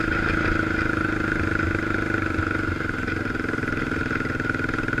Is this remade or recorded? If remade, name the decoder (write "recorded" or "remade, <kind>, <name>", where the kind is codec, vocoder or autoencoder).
recorded